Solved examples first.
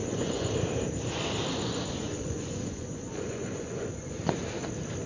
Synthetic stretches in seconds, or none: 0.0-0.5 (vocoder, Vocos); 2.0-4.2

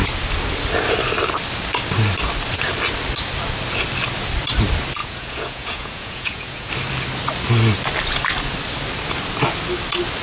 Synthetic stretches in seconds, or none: 5.0-6.7 (vocoder, Vocos)

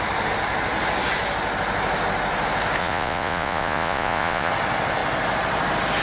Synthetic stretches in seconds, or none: 2.8-4.5 (vocoder, Vocos)

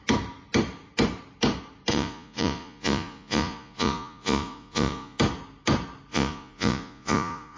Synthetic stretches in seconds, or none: 1.9-5.2 (vocoder, Vocos); 6.1-7.6

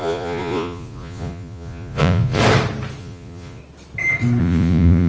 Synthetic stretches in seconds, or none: 0.0-2.4 (vocoder, Vocos); 3.0-3.6; 4.4-5.1

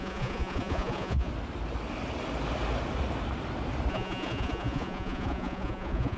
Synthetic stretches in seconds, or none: 0.0-1.3 (vocoder, Vocos); 3.9-6.2

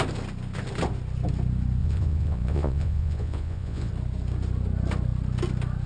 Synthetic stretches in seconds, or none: 1.8-3.9 (vocoder, Vocos)